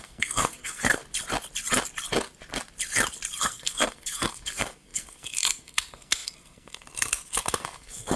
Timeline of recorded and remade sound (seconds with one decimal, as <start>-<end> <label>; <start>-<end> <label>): 0.0-1.0 remade; 1.0-3.4 recorded; 3.4-8.2 remade